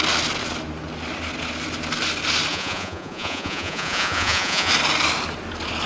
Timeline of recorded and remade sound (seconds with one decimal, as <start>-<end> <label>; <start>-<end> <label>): 0.0-2.5 recorded; 2.5-4.7 remade; 4.7-5.9 recorded